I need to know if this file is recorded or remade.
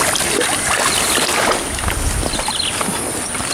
recorded